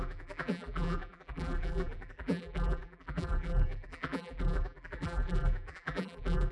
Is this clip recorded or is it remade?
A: remade